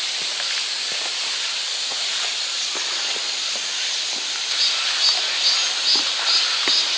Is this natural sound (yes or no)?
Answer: yes